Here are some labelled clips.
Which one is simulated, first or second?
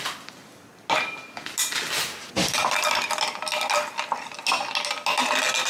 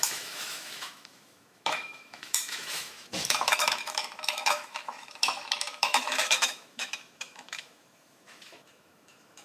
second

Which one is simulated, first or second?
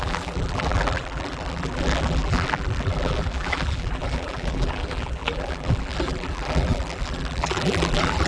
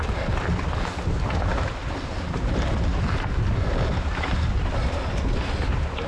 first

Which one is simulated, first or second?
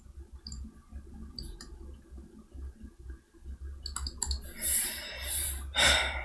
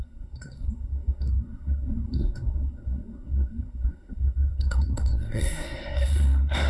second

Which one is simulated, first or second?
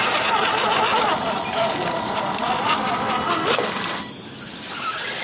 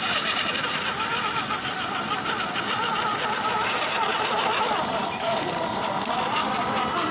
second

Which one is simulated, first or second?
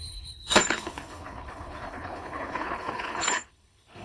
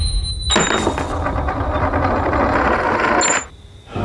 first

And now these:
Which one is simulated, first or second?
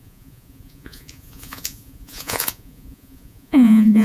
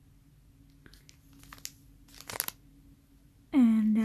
first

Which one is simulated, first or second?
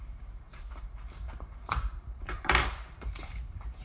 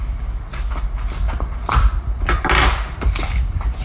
first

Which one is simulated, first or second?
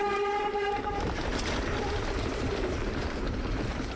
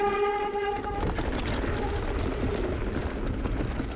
first